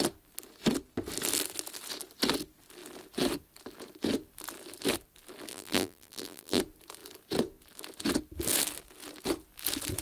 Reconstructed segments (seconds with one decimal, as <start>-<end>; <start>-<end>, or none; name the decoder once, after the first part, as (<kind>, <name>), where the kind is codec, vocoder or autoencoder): 5.5-6.6 (vocoder, BigVGAN v2)